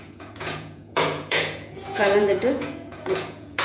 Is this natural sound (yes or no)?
no